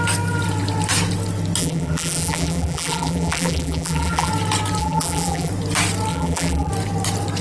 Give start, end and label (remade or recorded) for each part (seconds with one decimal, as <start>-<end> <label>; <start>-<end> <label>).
0.0-1.6 recorded; 1.6-4.3 remade; 4.3-4.8 recorded; 4.8-5.5 remade; 5.5-6.1 recorded; 6.1-6.7 remade; 6.7-7.4 recorded